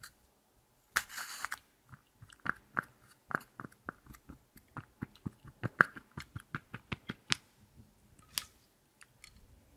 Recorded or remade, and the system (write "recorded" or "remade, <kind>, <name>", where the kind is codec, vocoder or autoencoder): recorded